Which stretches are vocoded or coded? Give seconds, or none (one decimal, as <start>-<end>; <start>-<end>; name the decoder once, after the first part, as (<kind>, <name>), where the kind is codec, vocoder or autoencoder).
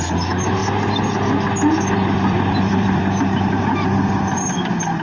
0.0-0.6 (vocoder, BigVGAN v2); 1.9-5.0